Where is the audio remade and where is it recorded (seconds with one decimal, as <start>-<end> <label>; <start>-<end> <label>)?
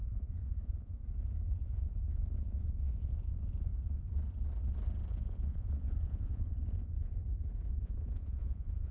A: 0.0-1.0 remade; 1.0-1.6 recorded; 1.6-3.7 remade; 3.7-5.1 recorded; 5.1-7.2 remade; 7.2-7.7 recorded; 7.7-8.9 remade